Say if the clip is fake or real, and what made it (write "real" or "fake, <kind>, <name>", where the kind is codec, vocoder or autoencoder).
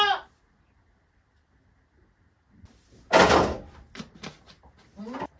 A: real